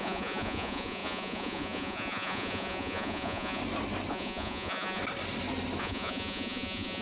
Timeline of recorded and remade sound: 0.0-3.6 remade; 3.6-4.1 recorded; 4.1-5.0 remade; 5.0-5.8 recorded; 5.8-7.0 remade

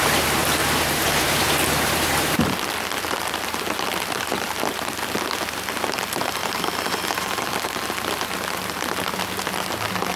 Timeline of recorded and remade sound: 0.0-0.6 recorded; 0.6-2.5 remade; 2.5-6.4 recorded; 6.4-7.4 remade; 7.4-10.2 recorded

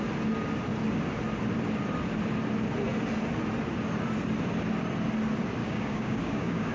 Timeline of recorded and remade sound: 0.0-5.6 recorded; 5.6-6.7 remade

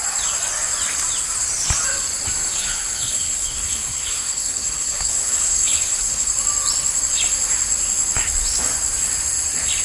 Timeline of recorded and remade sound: 0.0-2.5 recorded; 2.5-6.3 remade; 6.3-9.8 recorded

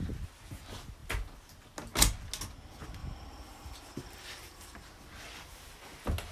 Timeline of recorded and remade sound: 0.0-3.0 recorded; 3.0-4.9 remade; 4.9-6.3 recorded